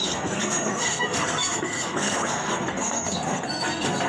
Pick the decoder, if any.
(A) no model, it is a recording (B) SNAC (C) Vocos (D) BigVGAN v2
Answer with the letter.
B